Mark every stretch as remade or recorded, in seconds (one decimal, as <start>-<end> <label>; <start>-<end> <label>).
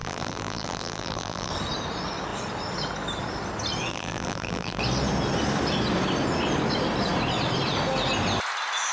0.0-1.5 remade; 1.5-3.9 recorded; 3.9-4.8 remade; 4.8-8.9 recorded